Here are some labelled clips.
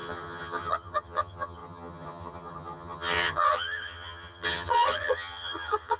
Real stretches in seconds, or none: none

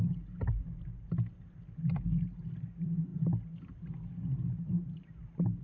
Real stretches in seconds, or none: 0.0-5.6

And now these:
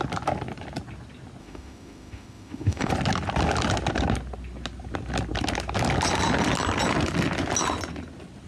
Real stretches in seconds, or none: 0.0-1.4; 2.9-8.5